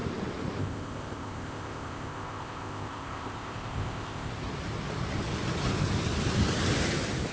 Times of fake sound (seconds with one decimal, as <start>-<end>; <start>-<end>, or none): 0.6-4.3